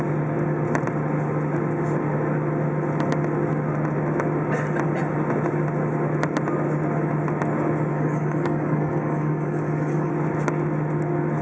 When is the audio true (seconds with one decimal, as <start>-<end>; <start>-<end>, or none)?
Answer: 0.0-7.9; 10.1-11.4

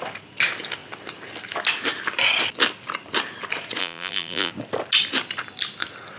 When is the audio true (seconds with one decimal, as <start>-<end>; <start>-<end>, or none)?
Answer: 0.0-3.8; 4.5-6.2